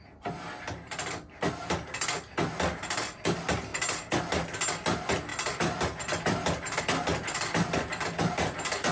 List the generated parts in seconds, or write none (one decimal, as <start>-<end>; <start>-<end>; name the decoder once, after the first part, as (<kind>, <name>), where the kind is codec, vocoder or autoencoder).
none